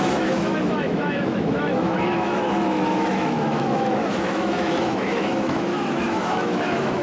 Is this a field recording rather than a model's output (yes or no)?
no